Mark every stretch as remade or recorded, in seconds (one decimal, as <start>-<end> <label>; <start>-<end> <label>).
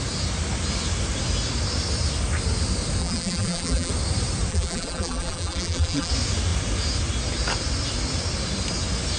0.0-3.0 recorded; 3.0-3.9 remade; 3.9-4.5 recorded; 4.5-6.1 remade; 6.1-9.2 recorded